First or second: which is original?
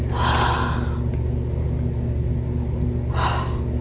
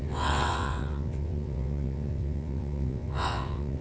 first